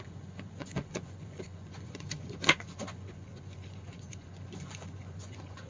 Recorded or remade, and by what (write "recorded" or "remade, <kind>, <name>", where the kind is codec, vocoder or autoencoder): remade, vocoder, Vocos